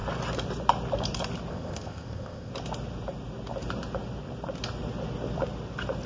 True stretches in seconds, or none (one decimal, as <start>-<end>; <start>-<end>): 0.0-1.5; 2.5-6.1